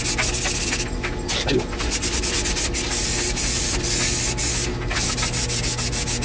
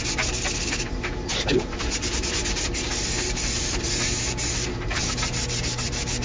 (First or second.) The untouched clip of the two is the first